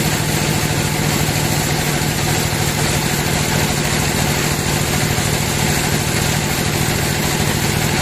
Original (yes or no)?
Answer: yes